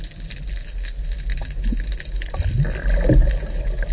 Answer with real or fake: real